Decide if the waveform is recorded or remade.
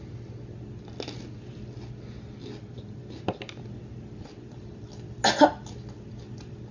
recorded